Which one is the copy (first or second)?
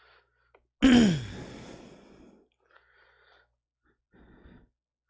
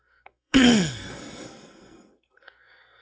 second